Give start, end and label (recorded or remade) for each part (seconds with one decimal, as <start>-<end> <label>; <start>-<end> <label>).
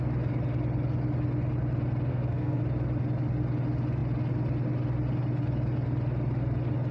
0.0-2.1 recorded; 2.1-2.6 remade; 2.6-6.9 recorded